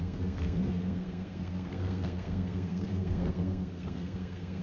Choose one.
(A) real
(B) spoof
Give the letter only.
B